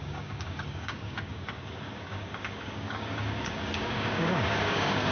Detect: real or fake fake